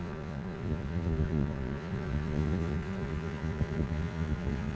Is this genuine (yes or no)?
no